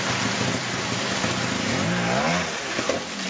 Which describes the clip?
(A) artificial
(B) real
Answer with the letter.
B